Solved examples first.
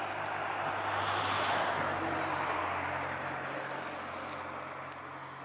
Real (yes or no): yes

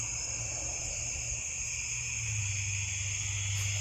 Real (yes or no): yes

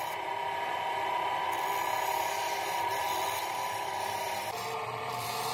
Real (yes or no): no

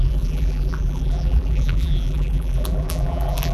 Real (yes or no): no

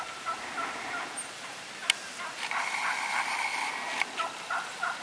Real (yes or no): yes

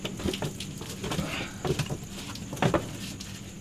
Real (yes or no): yes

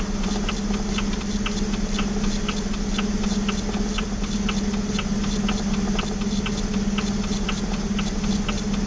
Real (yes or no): yes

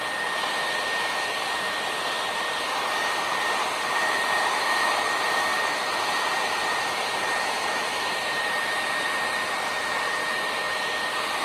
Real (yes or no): no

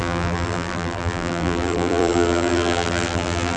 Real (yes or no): no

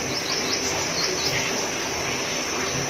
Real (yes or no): yes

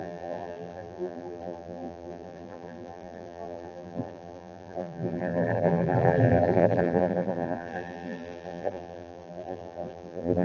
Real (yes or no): no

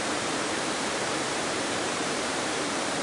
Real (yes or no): no